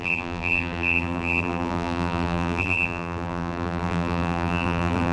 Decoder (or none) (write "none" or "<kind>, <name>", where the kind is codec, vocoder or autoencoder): vocoder, BigVGAN v2